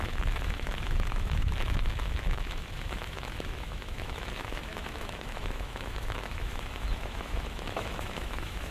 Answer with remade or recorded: remade